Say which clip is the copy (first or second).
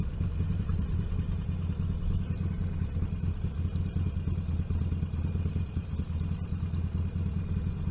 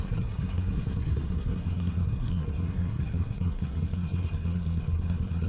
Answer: second